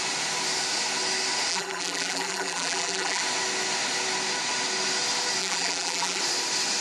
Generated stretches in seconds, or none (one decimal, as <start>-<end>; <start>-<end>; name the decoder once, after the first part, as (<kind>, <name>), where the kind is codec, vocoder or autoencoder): 1.5-3.2 (vocoder, BigVGAN v2); 5.4-6.2